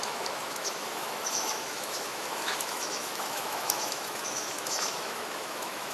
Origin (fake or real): fake